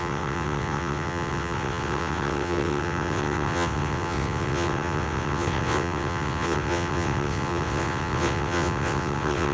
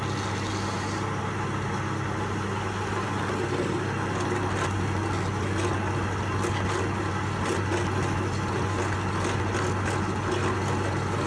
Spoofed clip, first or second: first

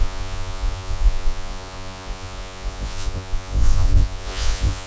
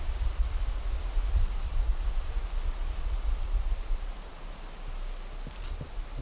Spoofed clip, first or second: first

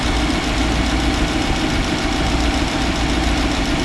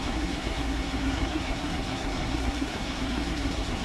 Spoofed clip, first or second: second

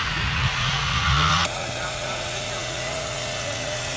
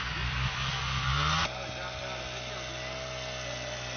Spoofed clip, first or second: first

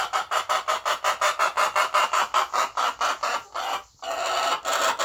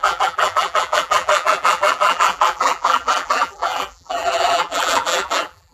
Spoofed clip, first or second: second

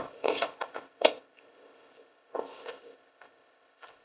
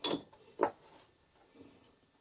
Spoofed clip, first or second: first